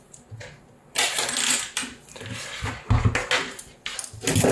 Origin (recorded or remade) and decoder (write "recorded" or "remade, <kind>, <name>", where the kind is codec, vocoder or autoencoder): recorded